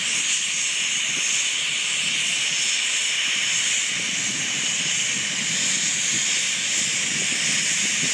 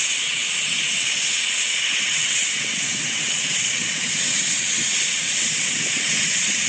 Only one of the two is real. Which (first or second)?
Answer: first